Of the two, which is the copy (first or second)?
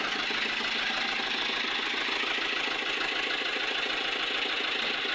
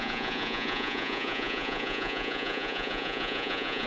second